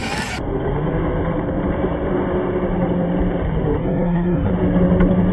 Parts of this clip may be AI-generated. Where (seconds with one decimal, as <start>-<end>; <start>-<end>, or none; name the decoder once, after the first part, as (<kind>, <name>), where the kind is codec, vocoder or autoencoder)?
3.8-4.5 (codec, SNAC)